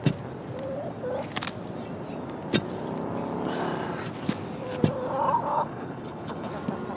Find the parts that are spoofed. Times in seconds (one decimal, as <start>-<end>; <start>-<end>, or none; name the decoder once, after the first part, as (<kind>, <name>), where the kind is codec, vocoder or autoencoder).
5.5-6.5 (codec, HILCodec)